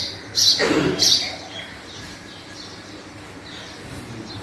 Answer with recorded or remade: remade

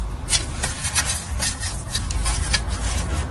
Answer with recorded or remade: recorded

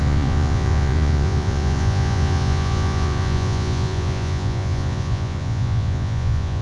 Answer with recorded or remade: remade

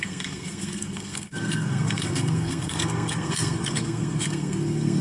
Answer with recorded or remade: remade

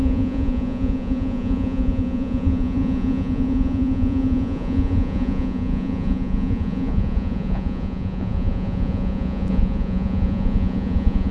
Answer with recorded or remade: remade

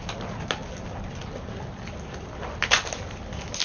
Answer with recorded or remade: recorded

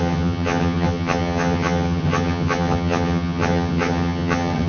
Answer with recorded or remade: remade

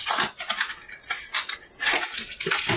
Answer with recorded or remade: recorded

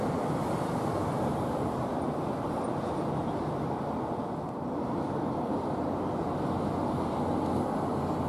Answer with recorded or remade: recorded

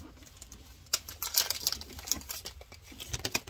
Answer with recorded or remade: recorded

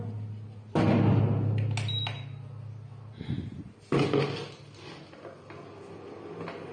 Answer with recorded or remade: recorded